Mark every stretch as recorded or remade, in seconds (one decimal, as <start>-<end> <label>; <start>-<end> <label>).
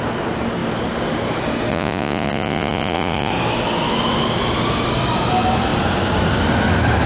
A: 0.0-1.7 recorded; 1.7-3.3 remade; 3.3-7.1 recorded